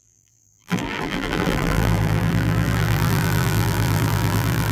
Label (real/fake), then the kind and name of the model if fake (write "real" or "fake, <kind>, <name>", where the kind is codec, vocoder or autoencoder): fake, vocoder, BigVGAN v2